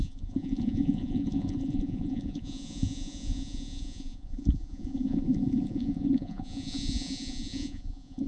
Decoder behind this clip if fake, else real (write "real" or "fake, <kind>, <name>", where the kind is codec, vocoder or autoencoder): fake, vocoder, Vocos